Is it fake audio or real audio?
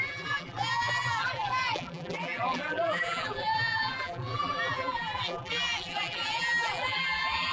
fake